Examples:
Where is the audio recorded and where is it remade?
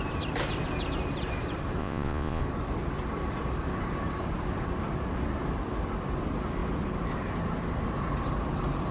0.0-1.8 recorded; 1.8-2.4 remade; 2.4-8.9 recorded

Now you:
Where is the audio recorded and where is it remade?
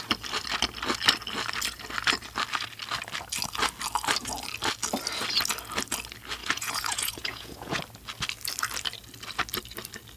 0.0-6.4 recorded; 6.4-7.8 remade; 7.8-10.2 recorded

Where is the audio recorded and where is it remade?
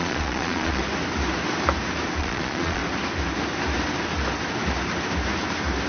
0.0-0.8 remade; 0.8-2.2 recorded; 2.2-2.8 remade; 2.8-5.9 recorded